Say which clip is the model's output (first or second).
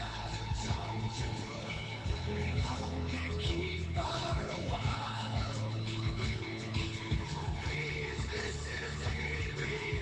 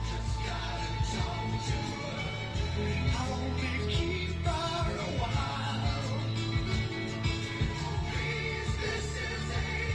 first